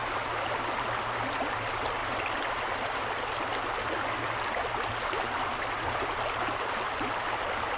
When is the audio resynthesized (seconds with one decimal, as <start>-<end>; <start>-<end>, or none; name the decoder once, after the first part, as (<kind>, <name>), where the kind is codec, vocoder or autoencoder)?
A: none